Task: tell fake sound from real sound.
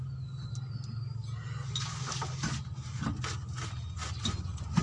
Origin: real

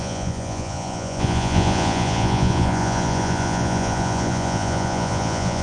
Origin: fake